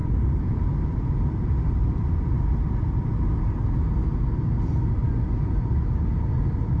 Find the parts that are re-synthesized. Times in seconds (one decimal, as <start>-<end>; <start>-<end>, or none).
0.0-3.1